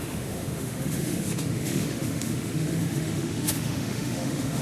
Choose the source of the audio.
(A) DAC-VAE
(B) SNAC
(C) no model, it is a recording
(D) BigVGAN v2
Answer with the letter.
A